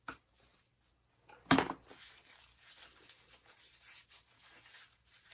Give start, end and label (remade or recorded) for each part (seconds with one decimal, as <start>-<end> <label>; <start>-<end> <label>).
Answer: 0.0-5.3 recorded

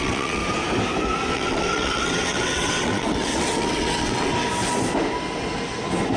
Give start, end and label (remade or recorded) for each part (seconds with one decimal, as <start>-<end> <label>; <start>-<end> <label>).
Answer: 0.0-0.4 remade; 0.4-1.3 recorded; 1.3-4.3 remade; 4.3-6.2 recorded

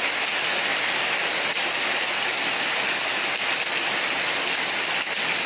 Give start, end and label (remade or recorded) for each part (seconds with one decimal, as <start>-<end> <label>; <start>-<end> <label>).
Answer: 0.0-5.5 recorded

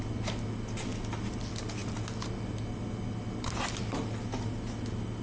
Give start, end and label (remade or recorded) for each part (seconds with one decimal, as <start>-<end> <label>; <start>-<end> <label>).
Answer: 0.0-5.2 recorded

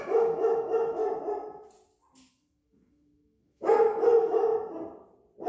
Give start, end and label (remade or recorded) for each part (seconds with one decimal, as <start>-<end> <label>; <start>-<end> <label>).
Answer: 0.0-1.0 remade; 1.0-2.3 recorded; 2.3-4.5 remade; 4.5-5.5 recorded

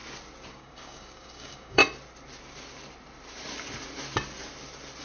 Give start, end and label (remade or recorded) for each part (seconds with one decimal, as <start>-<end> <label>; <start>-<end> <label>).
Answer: 0.0-0.5 recorded; 0.5-1.8 remade; 1.8-5.0 recorded

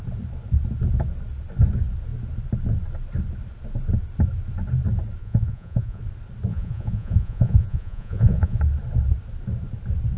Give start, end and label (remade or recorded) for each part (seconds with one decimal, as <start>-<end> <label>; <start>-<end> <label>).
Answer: 0.0-5.2 recorded; 5.2-6.0 remade; 6.0-6.5 recorded; 6.5-8.6 remade; 8.6-10.2 recorded